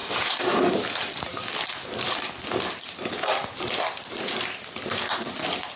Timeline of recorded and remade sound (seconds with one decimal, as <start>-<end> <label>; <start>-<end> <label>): 0.0-0.7 remade; 0.7-5.8 recorded